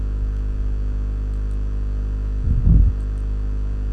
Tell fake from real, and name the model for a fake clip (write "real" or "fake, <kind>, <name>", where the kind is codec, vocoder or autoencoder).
real